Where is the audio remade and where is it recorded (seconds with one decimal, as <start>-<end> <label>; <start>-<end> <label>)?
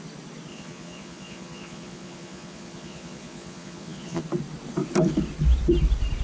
0.0-0.5 recorded; 0.5-4.2 remade; 4.2-6.2 recorded